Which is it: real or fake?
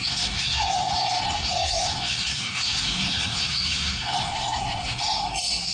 fake